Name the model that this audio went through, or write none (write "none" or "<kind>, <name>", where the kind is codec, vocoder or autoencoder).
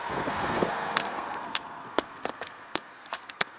codec, SNAC